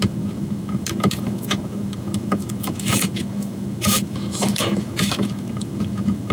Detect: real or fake fake